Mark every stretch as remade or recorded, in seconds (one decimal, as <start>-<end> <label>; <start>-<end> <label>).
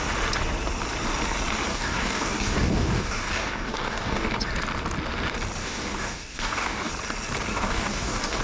0.0-1.7 recorded; 1.7-4.3 remade; 4.3-5.6 recorded; 5.6-6.9 remade; 6.9-7.5 recorded; 7.5-8.4 remade